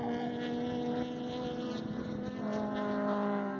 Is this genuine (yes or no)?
yes